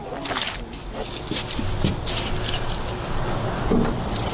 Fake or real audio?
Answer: real